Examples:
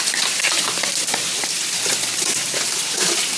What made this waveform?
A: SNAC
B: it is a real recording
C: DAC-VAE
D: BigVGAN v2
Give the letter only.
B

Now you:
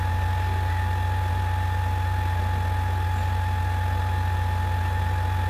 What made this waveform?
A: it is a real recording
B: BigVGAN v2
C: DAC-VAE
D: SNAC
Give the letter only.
A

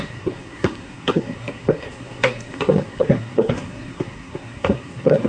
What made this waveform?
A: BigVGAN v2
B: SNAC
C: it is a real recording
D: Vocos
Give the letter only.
B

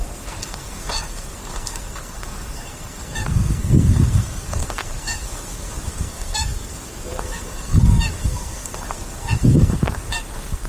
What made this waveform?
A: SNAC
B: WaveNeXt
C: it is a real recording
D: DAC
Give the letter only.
A